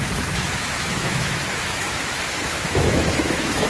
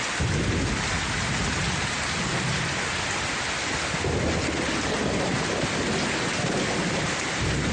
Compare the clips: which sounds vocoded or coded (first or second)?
first